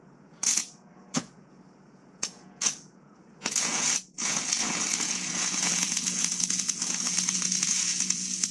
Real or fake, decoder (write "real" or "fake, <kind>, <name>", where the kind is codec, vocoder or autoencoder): fake, vocoder, Vocos